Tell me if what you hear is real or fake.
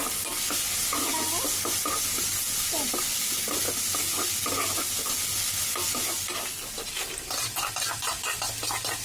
real